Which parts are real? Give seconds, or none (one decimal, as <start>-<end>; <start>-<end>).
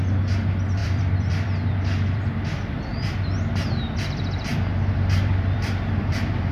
0.0-0.8; 2.2-4.5